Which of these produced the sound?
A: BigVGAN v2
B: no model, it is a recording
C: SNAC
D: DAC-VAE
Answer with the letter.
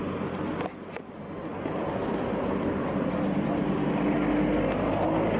B